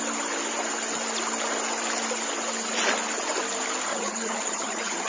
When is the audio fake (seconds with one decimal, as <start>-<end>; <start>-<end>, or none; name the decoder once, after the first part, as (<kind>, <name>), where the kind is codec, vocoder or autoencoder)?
3.9-5.1 (vocoder, HiFi-GAN)